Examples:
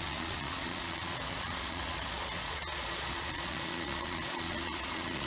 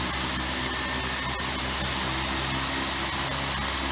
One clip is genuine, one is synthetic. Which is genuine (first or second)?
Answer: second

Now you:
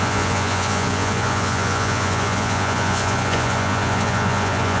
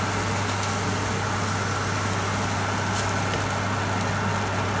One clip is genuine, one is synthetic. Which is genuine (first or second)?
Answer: second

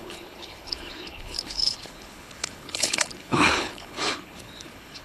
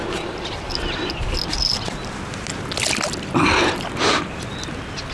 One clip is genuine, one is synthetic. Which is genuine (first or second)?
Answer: second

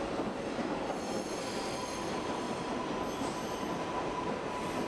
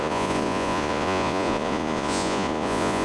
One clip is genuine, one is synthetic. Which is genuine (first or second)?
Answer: first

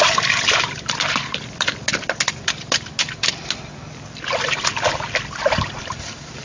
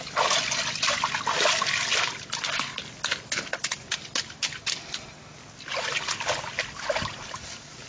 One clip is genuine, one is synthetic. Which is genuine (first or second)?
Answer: second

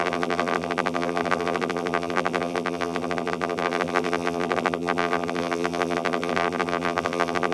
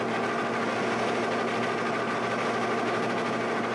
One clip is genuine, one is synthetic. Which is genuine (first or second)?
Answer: second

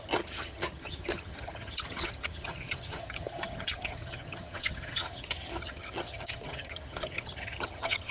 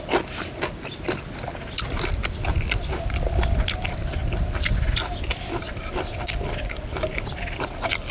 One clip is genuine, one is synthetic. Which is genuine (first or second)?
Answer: second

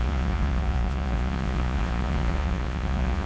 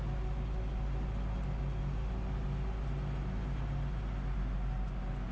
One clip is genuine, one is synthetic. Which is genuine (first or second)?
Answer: second